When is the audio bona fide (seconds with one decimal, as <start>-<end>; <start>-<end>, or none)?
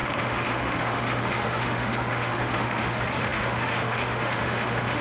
none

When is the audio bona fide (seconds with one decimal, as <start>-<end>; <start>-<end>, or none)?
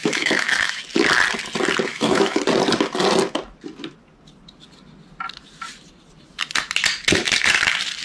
0.8-1.9; 2.4-8.0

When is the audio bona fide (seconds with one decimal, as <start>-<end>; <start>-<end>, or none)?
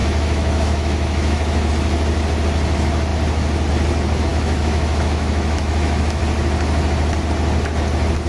1.7-4.3; 6.2-8.3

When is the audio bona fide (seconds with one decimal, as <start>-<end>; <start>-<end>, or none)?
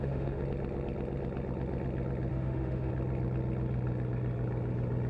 0.4-2.3; 2.9-5.1